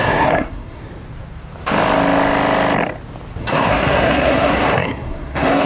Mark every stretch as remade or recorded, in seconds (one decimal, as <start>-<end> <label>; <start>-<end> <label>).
0.0-0.8 remade; 0.8-3.4 recorded; 3.4-5.7 remade